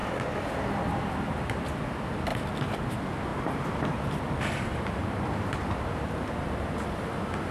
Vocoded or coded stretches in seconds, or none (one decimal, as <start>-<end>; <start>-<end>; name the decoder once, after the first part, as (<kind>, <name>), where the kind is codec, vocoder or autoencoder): 0.0-1.6 (vocoder, BigVGAN v2); 2.3-2.9; 3.3-7.5